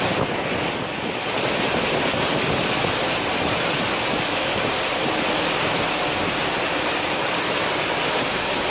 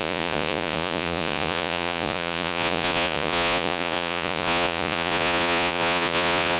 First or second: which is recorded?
first